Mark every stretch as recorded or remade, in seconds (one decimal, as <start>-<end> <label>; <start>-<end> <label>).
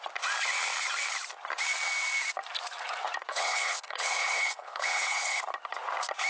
0.0-3.3 recorded; 3.3-5.4 remade; 5.4-6.3 recorded